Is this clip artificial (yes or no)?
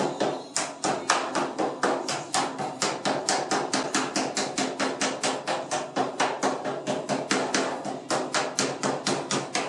yes